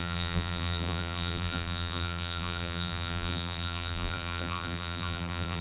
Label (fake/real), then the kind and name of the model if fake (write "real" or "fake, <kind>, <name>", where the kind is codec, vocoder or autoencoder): fake, vocoder, BigVGAN v2